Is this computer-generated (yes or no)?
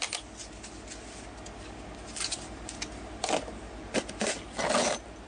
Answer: no